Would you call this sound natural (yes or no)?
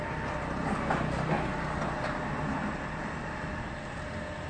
yes